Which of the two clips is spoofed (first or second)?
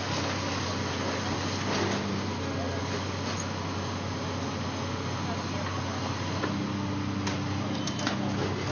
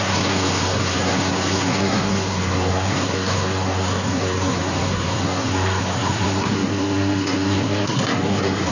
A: second